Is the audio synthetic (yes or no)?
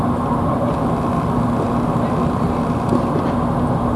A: no